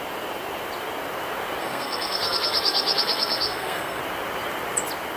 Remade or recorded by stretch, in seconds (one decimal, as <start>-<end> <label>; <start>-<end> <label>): 0.0-1.6 recorded; 1.6-4.0 remade; 4.0-5.2 recorded

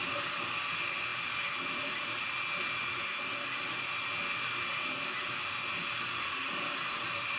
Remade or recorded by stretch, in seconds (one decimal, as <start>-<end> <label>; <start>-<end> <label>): 0.0-7.4 recorded

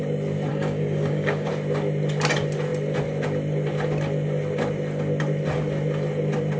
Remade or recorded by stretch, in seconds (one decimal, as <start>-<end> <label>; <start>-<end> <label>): 0.0-0.5 recorded; 0.5-1.5 remade; 1.5-6.6 recorded

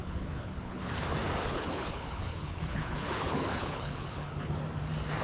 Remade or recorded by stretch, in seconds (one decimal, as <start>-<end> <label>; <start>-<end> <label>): 0.0-0.9 remade; 0.9-1.4 recorded; 1.4-4.5 remade; 4.5-5.2 recorded

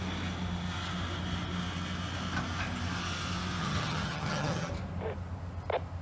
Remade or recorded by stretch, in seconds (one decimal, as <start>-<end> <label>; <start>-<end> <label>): 0.0-3.6 recorded; 3.6-4.7 remade; 4.7-6.0 recorded

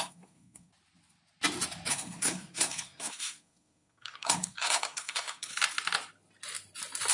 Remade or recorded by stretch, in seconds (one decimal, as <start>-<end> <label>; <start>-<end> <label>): 0.0-0.7 remade; 0.7-1.9 recorded; 1.9-5.5 remade; 5.5-7.1 recorded

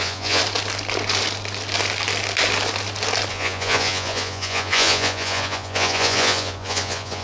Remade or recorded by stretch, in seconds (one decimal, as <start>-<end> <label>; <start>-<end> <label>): 0.0-0.4 remade; 0.4-3.3 recorded; 3.3-7.2 remade